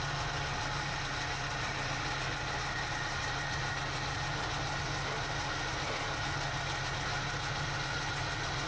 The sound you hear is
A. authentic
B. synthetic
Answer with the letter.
A